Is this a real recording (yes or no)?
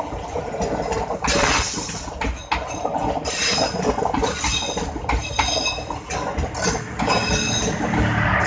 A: yes